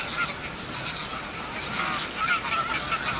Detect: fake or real real